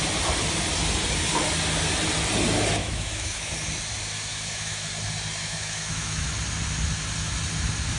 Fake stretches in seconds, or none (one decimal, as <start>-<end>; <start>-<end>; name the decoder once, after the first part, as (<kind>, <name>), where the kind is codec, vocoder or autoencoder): 2.8-3.5 (autoencoder, DAC-VAE); 4.3-4.9; 5.4-6.3